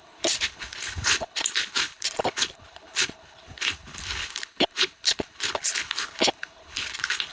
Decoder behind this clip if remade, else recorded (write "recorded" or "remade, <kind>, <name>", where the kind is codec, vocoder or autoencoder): remade, codec, HILCodec